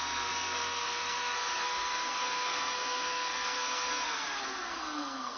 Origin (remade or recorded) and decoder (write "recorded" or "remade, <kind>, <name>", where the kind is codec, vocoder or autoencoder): remade, codec, SNAC